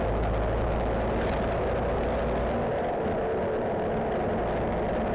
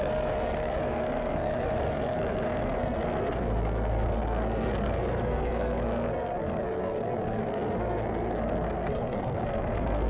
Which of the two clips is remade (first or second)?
second